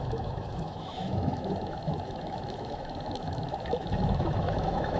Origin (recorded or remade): remade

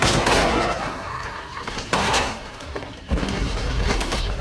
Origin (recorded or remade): remade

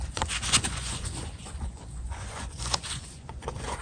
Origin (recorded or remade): remade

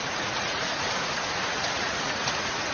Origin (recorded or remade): remade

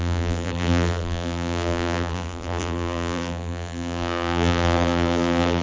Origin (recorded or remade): remade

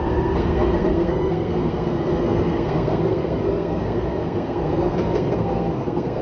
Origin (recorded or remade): remade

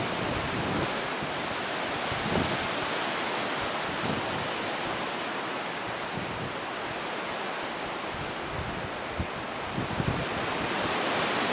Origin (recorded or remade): recorded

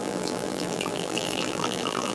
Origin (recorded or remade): remade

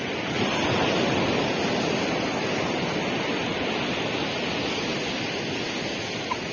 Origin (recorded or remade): recorded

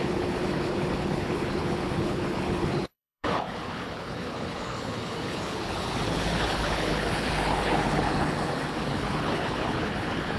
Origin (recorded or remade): remade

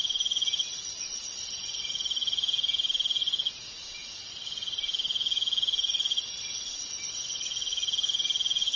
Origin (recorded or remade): recorded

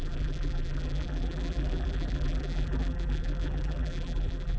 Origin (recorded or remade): remade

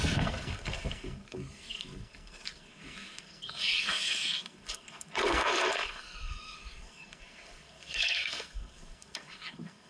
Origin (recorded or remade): remade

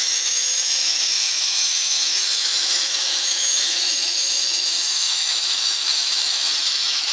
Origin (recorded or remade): remade